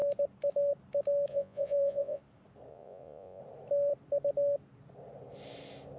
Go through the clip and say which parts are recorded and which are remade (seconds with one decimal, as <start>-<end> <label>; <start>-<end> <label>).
0.0-1.3 recorded; 1.3-2.2 remade; 2.2-2.7 recorded; 2.7-3.4 remade; 3.4-6.0 recorded